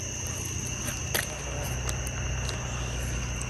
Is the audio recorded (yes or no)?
yes